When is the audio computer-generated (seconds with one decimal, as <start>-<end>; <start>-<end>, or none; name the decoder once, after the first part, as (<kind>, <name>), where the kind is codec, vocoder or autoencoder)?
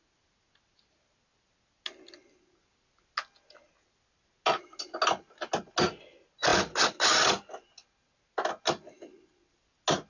none